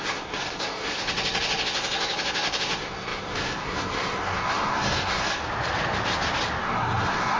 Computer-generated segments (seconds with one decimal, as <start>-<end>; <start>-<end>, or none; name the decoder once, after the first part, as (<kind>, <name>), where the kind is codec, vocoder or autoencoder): 0.0-5.4 (codec, SNAC); 6.6-7.4